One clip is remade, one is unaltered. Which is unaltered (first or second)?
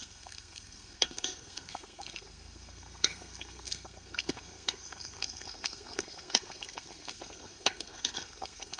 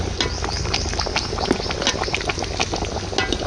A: second